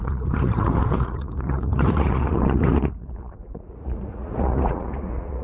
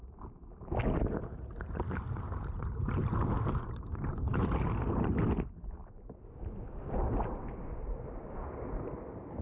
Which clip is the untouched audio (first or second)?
second